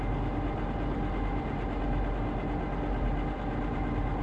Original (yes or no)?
yes